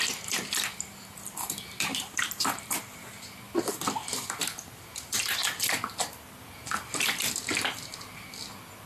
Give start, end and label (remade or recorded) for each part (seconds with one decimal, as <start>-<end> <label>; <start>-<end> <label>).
0.0-1.9 recorded; 1.9-2.8 remade; 2.8-8.9 recorded